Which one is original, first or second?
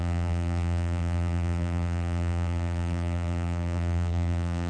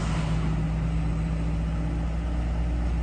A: second